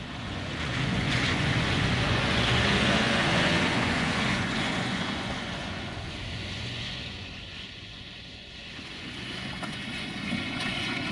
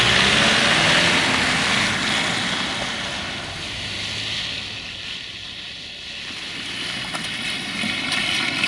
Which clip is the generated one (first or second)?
first